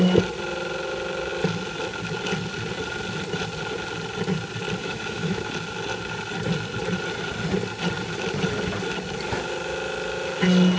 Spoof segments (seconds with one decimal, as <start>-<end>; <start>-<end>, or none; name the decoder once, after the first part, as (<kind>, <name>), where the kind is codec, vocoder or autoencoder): 4.8-5.5 (autoencoder, DAC-VAE)

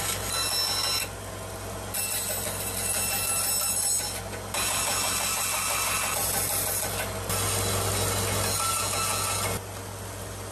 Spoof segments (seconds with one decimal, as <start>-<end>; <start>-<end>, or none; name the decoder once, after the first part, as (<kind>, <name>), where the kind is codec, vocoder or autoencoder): none